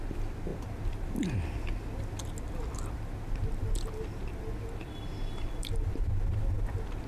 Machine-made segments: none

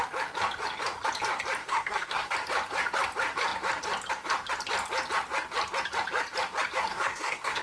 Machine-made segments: 1.6-2.3 (codec, SNAC); 6.9-7.6